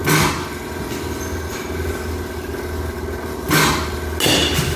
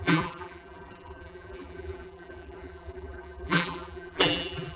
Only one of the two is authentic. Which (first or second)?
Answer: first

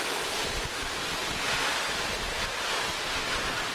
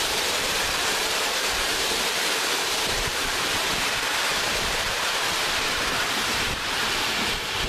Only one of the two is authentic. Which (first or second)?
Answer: first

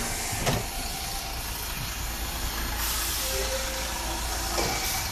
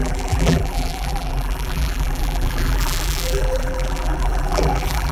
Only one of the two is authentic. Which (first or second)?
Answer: first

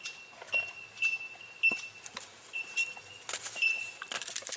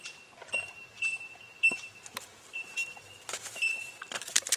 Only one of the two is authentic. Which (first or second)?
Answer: first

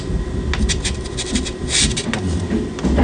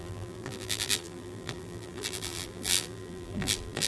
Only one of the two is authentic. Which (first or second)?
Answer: first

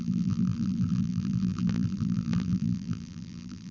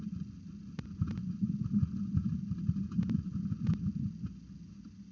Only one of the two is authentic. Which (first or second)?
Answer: second